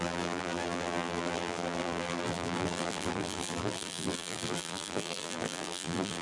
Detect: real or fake fake